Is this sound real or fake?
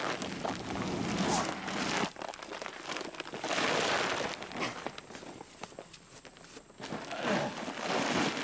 real